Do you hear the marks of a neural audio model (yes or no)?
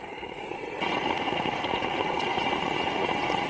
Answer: yes